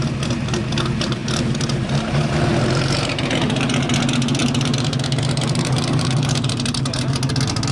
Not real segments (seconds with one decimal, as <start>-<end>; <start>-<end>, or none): 1.2-3.3; 4.4-7.3